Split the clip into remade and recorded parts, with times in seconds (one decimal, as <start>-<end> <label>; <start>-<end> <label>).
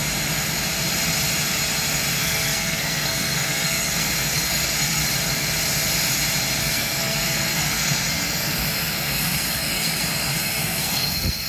0.0-2.2 recorded; 2.2-5.0 remade; 5.0-6.6 recorded; 6.6-11.5 remade